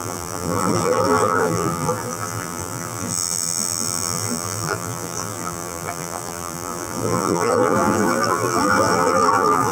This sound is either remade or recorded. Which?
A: remade